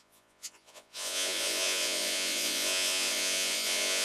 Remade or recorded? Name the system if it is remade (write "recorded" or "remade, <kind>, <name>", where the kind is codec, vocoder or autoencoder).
remade, vocoder, Vocos